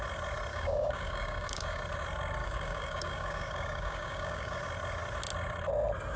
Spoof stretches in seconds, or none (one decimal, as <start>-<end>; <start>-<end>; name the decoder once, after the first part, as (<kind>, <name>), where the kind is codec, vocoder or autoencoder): 0.5-1.8 (codec, DAC); 2.4-4.6